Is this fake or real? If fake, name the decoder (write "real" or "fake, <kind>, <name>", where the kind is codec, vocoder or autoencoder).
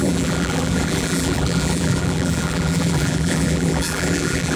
fake, vocoder, BigVGAN v2